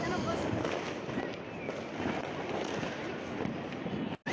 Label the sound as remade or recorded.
recorded